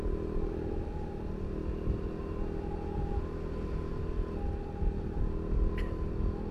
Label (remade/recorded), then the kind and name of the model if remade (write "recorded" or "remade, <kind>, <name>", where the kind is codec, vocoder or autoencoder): recorded